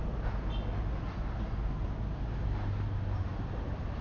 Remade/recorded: recorded